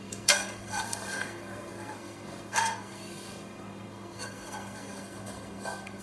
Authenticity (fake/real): fake